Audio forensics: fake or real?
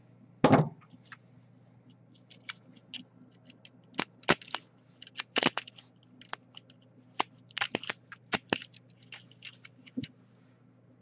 real